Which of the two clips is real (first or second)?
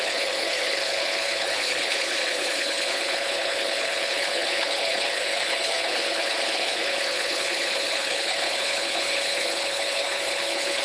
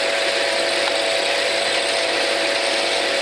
second